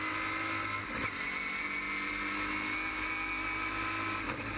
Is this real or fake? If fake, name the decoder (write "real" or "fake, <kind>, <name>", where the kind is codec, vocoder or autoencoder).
real